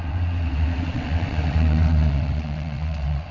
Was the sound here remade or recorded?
remade